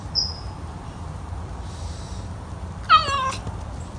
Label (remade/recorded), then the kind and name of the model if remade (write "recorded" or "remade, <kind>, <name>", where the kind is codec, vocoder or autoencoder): recorded